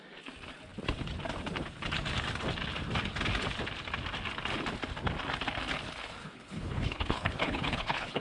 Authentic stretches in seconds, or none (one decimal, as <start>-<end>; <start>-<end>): 0.0-6.2